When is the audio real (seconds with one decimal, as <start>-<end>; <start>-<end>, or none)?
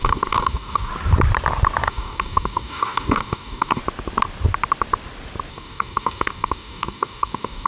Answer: 0.9-1.9; 3.8-5.5